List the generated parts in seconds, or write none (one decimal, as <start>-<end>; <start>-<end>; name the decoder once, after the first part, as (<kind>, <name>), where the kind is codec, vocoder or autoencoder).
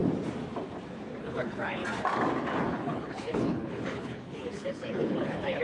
1.2-1.8 (codec, HILCodec); 2.6-5.6